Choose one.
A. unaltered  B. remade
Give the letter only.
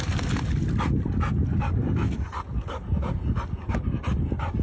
A